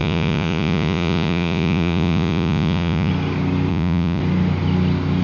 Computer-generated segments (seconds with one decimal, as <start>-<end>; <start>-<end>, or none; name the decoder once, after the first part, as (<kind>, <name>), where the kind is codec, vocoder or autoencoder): 0.0-3.1 (vocoder, Vocos); 3.7-4.2